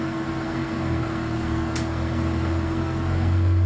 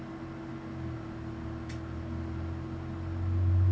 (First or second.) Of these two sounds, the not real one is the first